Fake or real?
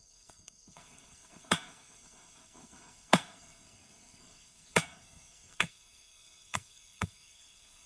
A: fake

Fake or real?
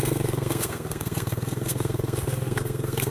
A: fake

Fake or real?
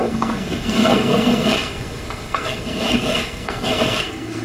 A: fake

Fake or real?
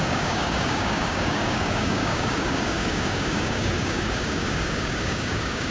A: fake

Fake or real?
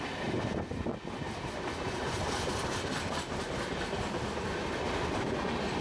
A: real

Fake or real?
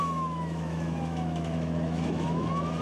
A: fake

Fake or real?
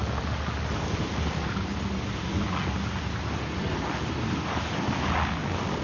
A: real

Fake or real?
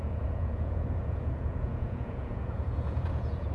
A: fake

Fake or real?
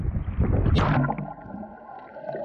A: real